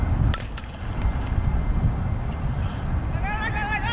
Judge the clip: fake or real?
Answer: real